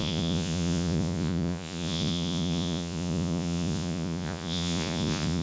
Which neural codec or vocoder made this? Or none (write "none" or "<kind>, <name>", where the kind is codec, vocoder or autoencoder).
vocoder, Vocos